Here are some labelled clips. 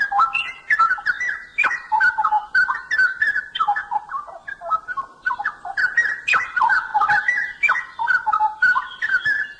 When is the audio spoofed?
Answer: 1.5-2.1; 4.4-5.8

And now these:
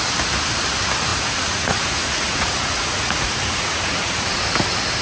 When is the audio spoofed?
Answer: 1.1-4.1

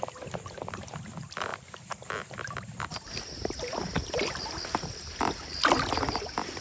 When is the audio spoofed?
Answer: none

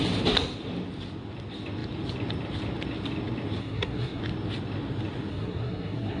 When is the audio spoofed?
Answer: 3.6-4.2; 5.3-6.2

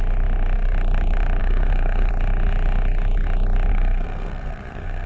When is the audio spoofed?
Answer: 1.4-2.1; 3.7-5.1